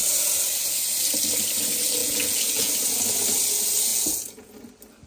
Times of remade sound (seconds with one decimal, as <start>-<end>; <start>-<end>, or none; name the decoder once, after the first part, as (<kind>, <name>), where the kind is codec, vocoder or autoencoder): 2.0-2.7 (vocoder, Vocos); 3.9-4.5